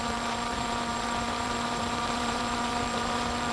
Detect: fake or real fake